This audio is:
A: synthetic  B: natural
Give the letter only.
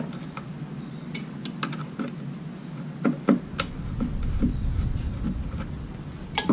B